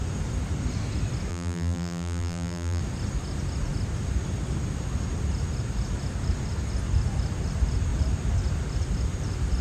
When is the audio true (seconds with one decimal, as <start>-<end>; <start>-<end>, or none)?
0.0-1.3; 2.8-9.6